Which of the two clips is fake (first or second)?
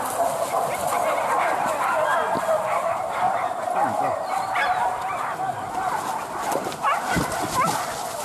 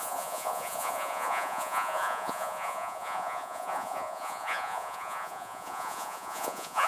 second